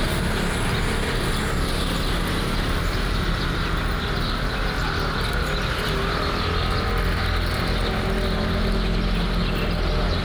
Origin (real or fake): real